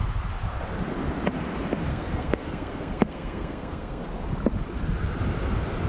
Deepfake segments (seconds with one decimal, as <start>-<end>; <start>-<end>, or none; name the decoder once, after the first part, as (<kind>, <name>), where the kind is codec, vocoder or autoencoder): 1.9-4.0 (codec, SNAC)